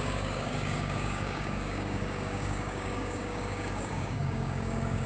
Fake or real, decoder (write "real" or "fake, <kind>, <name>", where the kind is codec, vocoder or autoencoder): fake, codec, DAC